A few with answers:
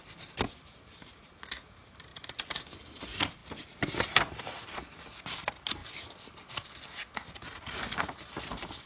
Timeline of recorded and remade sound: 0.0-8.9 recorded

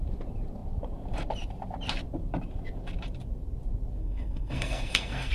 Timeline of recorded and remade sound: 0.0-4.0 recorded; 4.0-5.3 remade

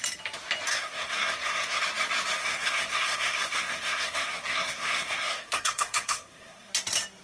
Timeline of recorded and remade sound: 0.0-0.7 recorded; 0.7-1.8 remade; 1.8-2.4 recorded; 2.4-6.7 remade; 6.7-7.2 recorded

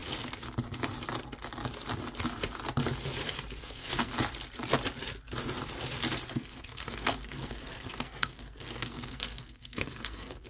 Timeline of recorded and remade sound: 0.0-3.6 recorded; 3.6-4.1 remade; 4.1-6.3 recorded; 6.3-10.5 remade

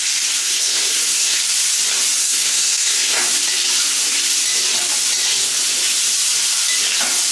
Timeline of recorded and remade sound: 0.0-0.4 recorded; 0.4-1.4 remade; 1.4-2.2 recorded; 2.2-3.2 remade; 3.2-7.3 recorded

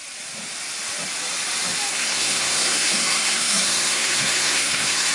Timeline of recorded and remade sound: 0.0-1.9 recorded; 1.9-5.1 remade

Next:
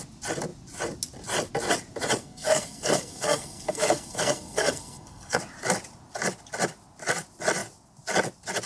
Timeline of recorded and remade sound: 0.0-2.2 recorded; 2.2-5.4 remade; 5.4-8.7 recorded

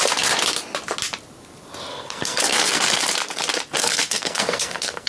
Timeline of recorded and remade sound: 0.0-1.9 recorded; 1.9-3.0 remade; 3.0-3.8 recorded; 3.8-5.1 remade